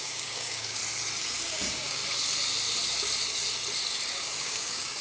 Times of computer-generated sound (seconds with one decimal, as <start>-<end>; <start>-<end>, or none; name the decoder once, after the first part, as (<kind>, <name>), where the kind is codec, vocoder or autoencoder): 0.0-0.8 (codec, DAC); 1.5-2.0; 4.1-5.0